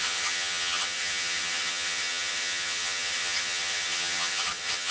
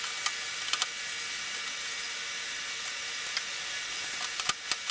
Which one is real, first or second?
second